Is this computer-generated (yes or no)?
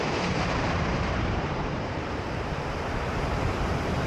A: yes